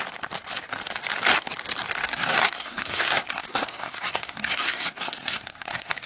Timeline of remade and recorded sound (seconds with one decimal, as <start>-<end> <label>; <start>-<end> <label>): 0.0-2.0 recorded; 2.0-6.1 remade